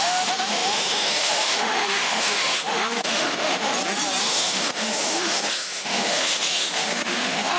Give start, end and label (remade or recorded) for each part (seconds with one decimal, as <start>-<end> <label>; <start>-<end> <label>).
0.0-3.7 remade; 3.7-4.2 recorded; 4.2-7.6 remade